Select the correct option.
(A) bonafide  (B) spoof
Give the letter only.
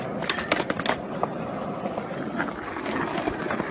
A